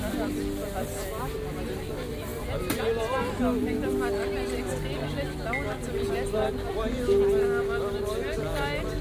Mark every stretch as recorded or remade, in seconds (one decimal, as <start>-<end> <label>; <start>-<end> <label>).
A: 0.0-9.0 recorded